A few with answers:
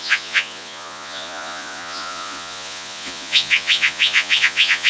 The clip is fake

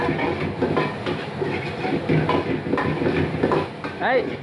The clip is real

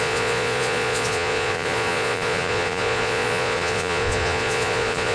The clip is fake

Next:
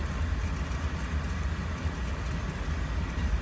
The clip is real